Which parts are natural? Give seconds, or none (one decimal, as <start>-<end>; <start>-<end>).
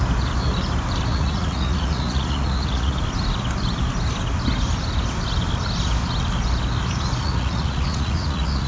0.0-1.1; 3.0-7.2